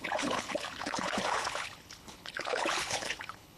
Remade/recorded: remade